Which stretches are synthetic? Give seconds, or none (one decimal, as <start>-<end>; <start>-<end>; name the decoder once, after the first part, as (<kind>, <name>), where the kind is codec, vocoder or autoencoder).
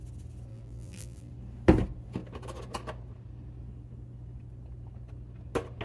0.5-1.3 (vocoder, BigVGAN v2)